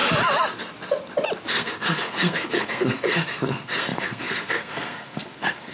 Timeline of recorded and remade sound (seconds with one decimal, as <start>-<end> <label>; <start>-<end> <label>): 0.0-1.5 recorded; 1.5-5.7 remade